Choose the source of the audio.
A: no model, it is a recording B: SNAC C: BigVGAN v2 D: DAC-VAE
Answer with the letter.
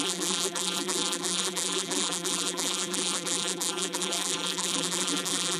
C